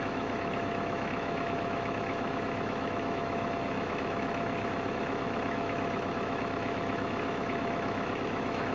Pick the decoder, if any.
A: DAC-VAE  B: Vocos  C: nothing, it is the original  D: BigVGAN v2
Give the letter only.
A